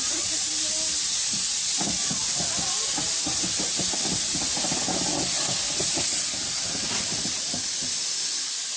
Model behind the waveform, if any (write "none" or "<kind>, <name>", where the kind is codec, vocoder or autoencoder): none